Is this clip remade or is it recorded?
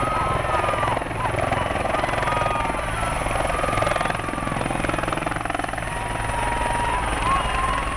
recorded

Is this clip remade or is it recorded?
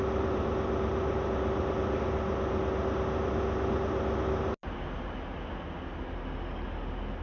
recorded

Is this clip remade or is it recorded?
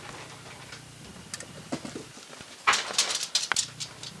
recorded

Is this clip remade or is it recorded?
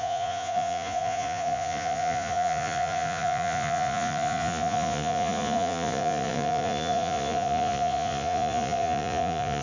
remade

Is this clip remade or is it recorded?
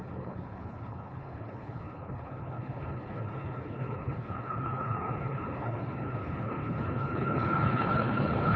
remade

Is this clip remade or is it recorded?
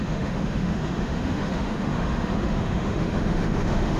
remade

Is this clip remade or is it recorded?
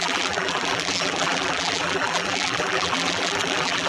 remade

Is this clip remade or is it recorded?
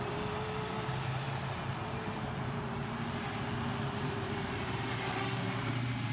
remade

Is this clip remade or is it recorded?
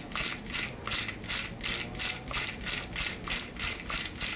recorded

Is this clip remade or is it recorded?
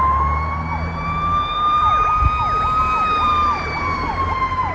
remade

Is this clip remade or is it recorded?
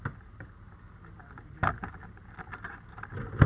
recorded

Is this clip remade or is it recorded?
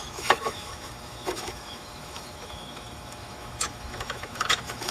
remade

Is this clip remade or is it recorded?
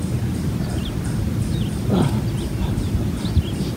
recorded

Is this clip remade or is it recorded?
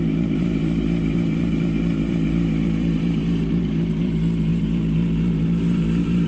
remade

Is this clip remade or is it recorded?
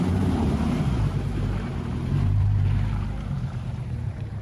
remade